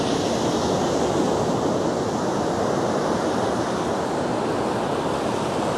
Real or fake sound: real